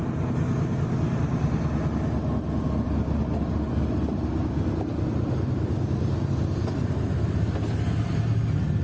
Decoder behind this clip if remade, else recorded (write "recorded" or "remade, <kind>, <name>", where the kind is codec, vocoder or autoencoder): recorded